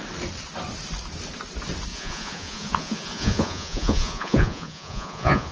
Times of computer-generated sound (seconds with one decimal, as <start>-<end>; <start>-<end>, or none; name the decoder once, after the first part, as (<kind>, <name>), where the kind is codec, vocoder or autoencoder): 1.9-5.5 (vocoder, Vocos)